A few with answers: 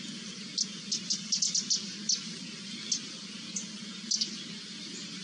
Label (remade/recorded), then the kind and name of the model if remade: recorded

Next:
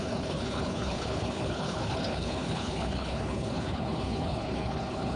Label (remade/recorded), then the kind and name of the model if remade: remade, codec, HILCodec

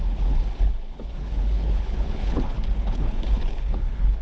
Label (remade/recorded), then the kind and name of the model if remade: remade, codec, HILCodec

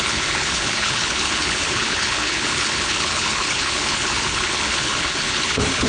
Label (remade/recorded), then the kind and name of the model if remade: remade, codec, HILCodec